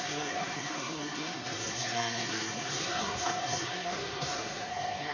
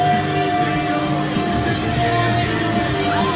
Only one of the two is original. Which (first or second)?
second